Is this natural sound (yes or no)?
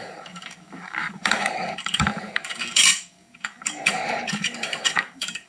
no